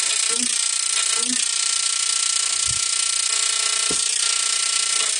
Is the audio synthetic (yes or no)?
no